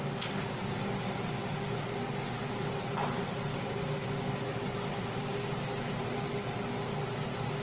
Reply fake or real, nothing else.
real